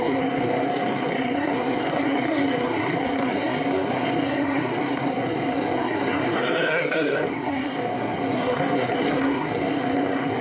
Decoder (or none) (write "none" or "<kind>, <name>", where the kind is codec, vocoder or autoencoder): codec, SNAC